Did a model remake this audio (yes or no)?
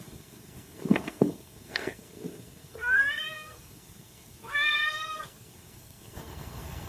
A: yes